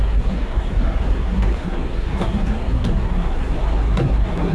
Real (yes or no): no